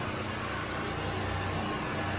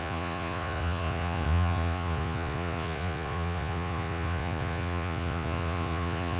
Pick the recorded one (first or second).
first